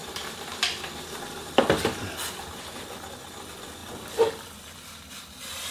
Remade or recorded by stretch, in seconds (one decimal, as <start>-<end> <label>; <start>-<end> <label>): 0.0-0.9 remade; 0.9-3.8 recorded; 3.8-4.5 remade; 4.5-5.7 recorded